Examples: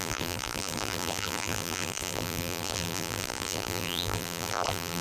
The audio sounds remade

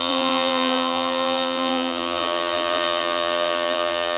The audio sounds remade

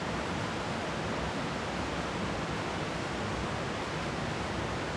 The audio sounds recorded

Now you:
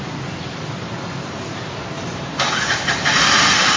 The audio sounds recorded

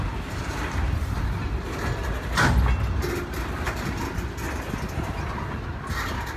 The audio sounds recorded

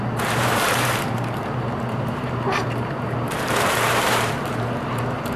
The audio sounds remade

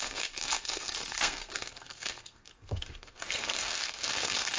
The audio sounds remade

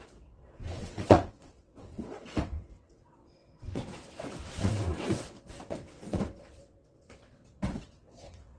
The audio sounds remade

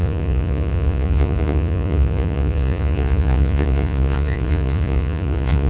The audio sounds remade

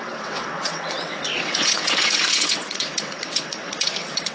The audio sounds remade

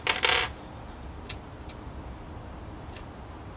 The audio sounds recorded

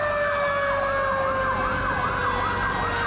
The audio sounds recorded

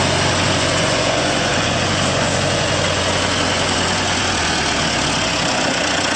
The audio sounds remade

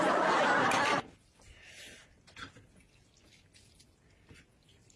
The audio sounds recorded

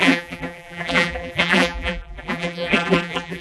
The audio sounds remade